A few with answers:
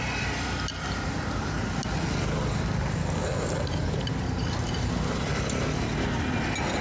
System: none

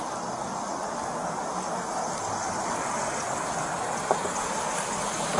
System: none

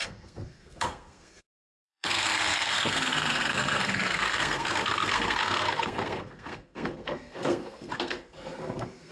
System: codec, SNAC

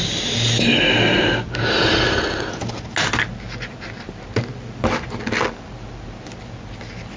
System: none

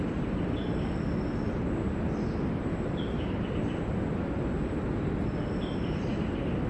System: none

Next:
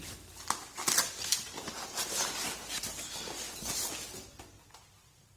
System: none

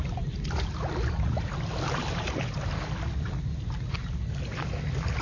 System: none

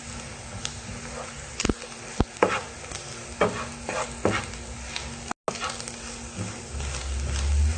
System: none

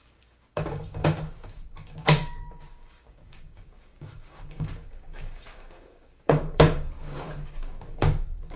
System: codec, DAC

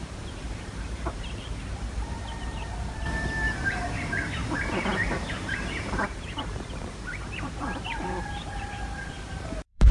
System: vocoder, BigVGAN v2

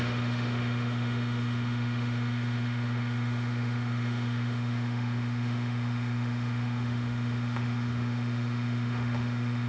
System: autoencoder, DAC-VAE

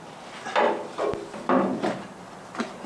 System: none